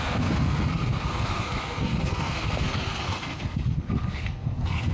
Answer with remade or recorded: remade